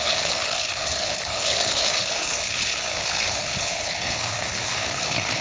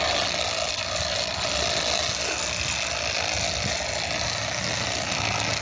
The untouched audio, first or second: second